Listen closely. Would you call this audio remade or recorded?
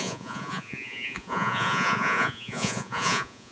remade